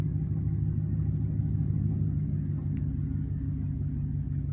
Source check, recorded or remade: recorded